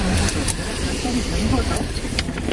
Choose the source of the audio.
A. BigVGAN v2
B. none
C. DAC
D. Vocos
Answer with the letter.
A